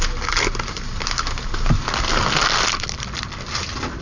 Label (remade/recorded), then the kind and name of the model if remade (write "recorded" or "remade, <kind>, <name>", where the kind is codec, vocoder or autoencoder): recorded